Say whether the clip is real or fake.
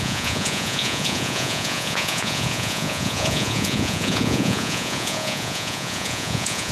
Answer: fake